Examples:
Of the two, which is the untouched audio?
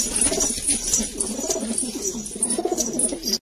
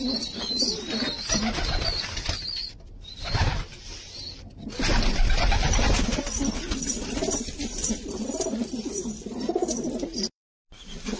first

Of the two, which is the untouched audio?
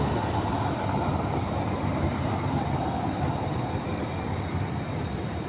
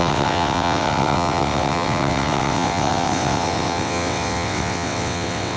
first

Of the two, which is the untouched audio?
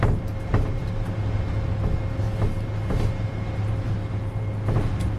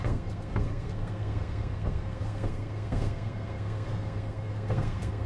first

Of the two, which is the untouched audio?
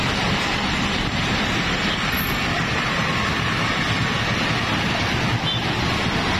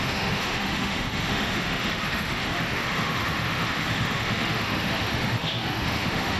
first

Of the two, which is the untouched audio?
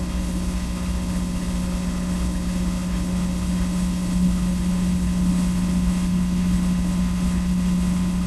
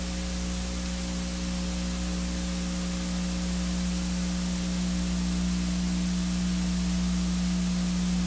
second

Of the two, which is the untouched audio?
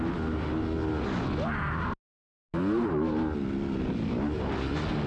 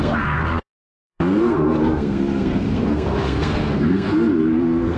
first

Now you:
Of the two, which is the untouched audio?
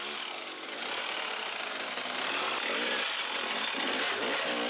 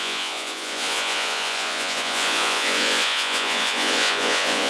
first